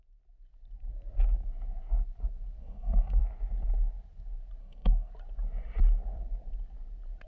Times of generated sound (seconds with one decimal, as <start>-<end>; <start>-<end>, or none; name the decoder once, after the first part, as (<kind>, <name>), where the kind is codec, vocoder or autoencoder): 2.6-3.2 (codec, SNAC); 4.6-5.1